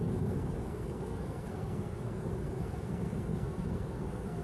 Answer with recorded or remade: remade